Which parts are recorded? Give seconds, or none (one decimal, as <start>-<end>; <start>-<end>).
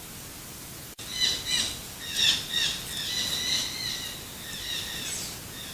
0.0-5.7